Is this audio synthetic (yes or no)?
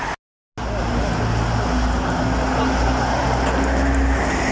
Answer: no